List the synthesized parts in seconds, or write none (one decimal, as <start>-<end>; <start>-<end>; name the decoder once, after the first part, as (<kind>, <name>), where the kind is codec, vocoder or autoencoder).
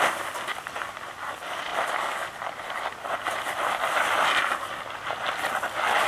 none